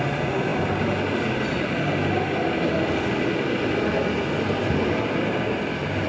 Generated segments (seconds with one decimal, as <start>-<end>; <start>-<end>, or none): none